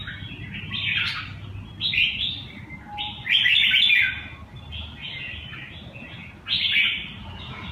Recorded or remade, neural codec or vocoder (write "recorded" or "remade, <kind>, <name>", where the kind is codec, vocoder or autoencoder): recorded